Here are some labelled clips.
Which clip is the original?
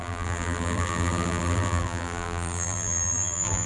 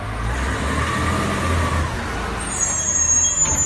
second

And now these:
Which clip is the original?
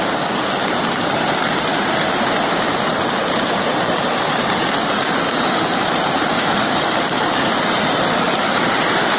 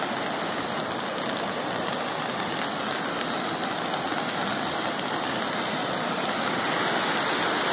second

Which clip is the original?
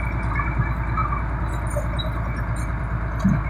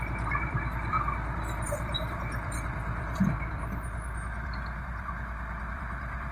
first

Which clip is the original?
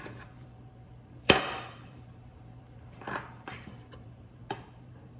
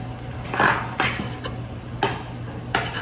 second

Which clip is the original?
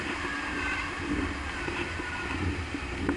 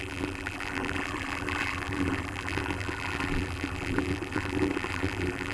first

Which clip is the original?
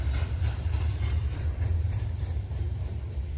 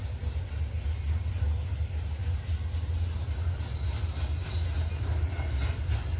second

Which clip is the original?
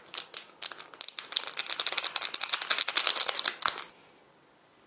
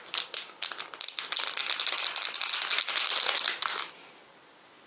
second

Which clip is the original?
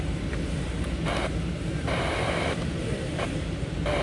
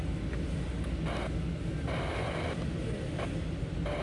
second